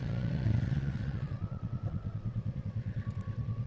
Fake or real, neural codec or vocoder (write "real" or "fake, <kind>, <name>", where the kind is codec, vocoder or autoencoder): fake, vocoder, WaveNeXt